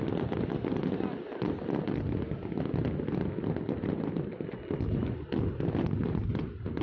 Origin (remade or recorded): recorded